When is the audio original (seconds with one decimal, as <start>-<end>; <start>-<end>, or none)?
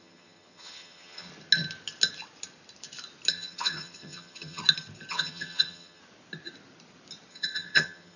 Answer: 1.3-3.3; 4.6-5.1; 6.0-7.3